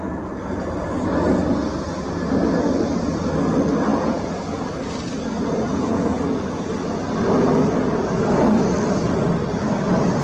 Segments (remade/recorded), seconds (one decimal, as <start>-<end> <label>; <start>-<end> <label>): 0.0-3.9 recorded; 3.9-4.4 remade; 4.4-5.7 recorded; 5.7-6.7 remade; 6.7-10.2 recorded